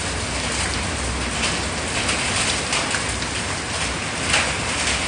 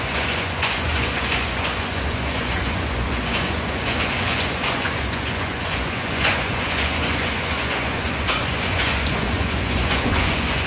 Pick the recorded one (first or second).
first